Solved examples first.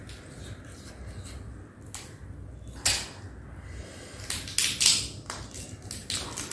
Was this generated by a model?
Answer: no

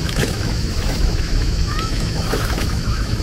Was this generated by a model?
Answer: yes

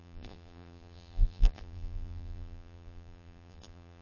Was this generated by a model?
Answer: yes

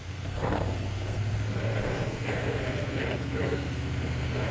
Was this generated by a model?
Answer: yes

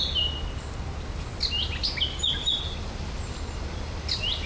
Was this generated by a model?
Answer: no